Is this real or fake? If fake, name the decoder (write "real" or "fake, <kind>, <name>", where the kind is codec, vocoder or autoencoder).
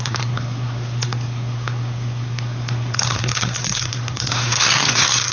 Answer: fake, codec, SNAC